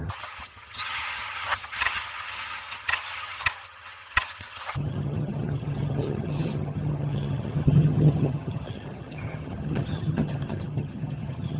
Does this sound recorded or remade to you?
remade